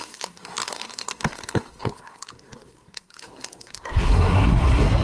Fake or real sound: fake